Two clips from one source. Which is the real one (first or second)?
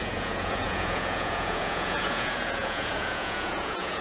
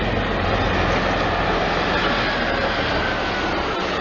second